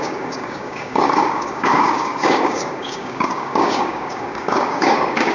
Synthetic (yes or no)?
yes